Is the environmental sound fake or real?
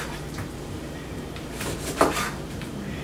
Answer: fake